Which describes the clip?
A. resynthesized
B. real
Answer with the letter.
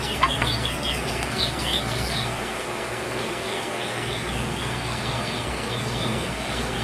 A